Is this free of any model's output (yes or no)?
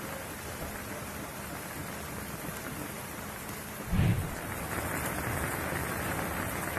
yes